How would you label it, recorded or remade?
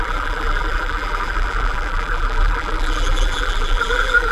remade